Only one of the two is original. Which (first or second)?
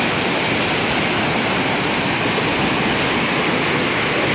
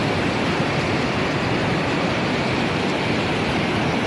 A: first